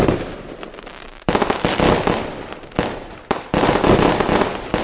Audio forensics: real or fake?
fake